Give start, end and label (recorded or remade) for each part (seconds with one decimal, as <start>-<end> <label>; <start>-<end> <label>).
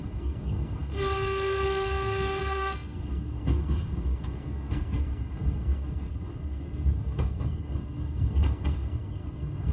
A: 0.0-9.7 remade